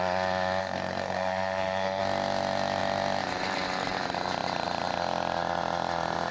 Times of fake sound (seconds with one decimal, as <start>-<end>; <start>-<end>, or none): 0.6-2.0